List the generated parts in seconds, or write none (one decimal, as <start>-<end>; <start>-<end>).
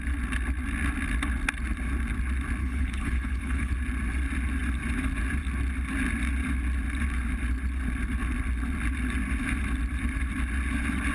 2.6-3.7